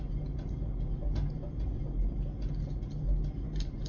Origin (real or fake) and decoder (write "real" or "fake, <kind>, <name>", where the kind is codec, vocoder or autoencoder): real